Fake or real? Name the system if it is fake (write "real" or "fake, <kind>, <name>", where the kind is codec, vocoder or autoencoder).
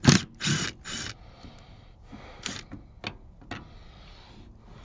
real